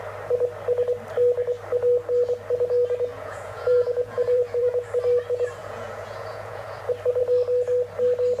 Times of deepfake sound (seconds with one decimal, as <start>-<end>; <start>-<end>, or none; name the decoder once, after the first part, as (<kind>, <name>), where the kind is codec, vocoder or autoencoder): 3.1-4.9 (vocoder, Vocos); 5.6-6.8